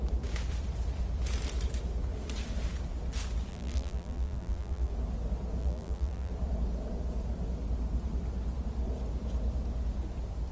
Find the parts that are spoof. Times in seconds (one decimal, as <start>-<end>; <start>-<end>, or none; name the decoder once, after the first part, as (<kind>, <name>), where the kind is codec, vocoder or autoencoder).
3.5-4.9 (vocoder, BigVGAN v2); 5.6-6.3